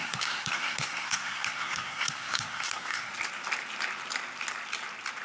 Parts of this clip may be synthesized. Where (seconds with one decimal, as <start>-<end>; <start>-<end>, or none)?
0.0-3.1

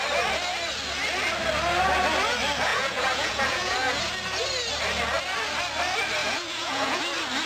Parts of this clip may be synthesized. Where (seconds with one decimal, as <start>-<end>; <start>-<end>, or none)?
2.7-4.0; 6.2-7.0

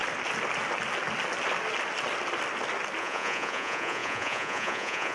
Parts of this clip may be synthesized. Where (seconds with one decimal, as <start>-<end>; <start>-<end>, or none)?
3.0-5.1

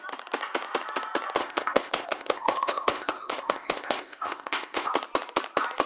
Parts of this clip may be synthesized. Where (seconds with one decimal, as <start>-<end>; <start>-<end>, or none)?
1.4-4.9

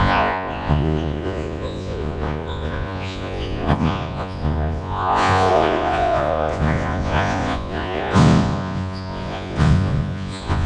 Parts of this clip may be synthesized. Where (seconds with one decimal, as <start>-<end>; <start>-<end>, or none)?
0.0-10.7

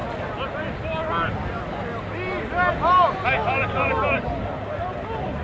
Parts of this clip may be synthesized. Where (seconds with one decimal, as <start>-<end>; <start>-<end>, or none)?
none

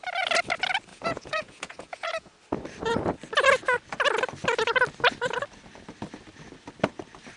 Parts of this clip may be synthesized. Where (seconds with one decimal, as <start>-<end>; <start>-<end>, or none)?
0.9-2.3